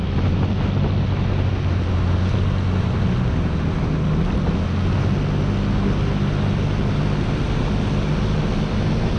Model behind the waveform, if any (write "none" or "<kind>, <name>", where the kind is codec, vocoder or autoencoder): none